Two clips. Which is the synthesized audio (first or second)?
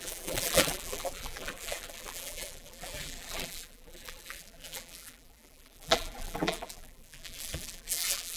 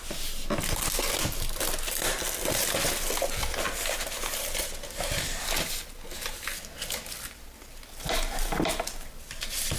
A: first